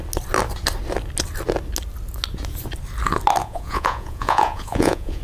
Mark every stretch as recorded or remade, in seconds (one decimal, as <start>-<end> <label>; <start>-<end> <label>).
0.0-3.4 recorded; 3.4-5.2 remade